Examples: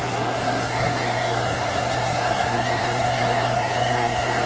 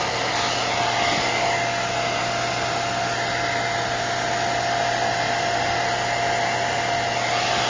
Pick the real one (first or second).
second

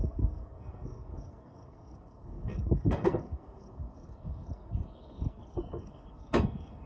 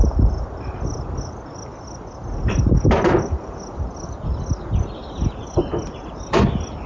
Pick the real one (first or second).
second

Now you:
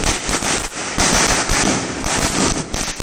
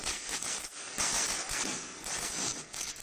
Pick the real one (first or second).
first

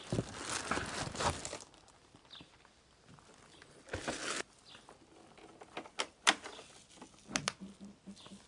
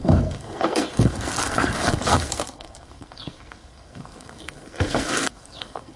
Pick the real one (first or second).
first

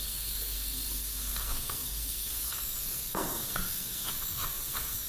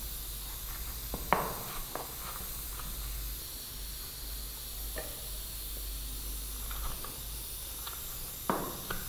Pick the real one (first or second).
second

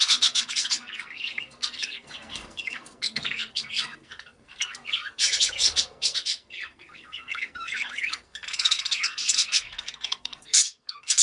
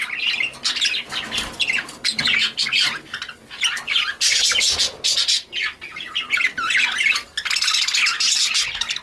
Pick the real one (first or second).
second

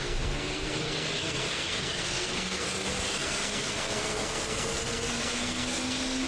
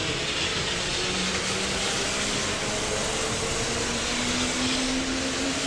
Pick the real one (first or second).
second